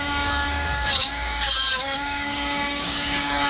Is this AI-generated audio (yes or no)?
yes